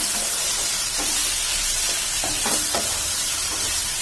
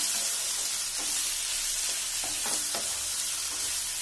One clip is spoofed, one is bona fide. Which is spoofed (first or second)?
first